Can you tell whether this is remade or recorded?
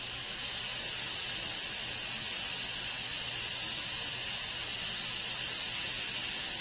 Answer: recorded